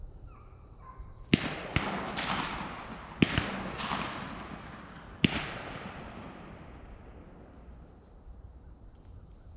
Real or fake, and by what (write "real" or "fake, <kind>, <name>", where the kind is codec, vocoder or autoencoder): real